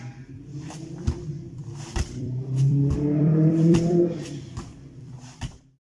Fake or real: fake